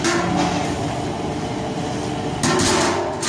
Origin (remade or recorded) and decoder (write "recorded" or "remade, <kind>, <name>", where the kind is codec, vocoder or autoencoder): recorded